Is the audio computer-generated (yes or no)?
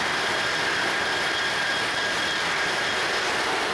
no